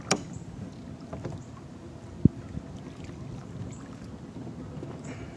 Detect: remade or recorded recorded